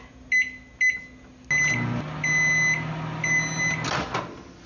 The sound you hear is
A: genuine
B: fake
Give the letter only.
A